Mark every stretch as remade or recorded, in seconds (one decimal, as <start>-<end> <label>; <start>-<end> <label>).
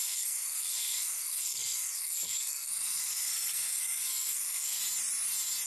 0.0-4.8 remade; 4.8-5.7 recorded